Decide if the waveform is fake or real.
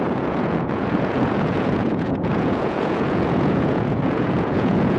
fake